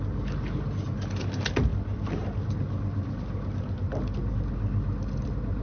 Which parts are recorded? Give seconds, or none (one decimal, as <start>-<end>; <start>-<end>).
0.0-5.6